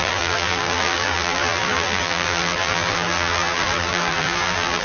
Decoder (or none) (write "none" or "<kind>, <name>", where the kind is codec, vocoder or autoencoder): vocoder, BigVGAN v2